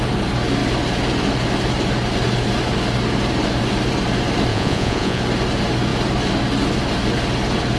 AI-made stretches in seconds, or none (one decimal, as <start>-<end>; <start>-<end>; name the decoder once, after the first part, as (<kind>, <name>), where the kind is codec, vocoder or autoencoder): 4.5-5.2 (vocoder, Vocos)